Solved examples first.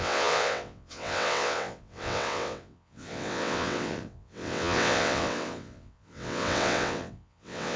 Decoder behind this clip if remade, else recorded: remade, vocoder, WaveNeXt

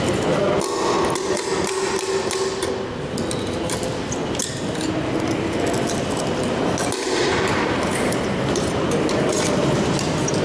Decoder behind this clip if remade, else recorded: recorded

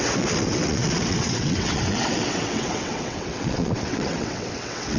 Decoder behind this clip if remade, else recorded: remade, vocoder, WaveNeXt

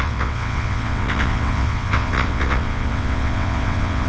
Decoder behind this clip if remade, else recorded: remade, vocoder, WaveNeXt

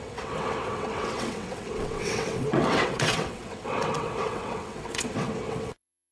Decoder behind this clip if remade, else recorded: remade, vocoder, WaveNeXt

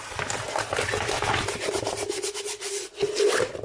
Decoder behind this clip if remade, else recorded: recorded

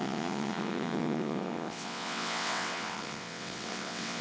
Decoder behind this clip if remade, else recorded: remade, vocoder, WaveNeXt